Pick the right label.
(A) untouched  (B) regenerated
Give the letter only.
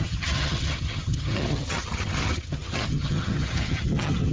B